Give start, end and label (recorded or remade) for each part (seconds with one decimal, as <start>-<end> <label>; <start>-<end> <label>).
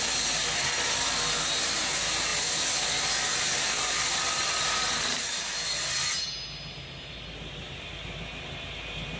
0.0-9.2 recorded